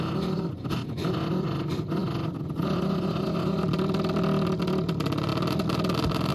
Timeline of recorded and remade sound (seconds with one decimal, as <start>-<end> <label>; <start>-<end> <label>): 0.0-6.3 recorded